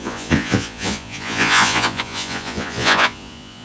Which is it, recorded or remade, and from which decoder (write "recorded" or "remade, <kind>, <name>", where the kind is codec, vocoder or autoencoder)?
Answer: remade, vocoder, Vocos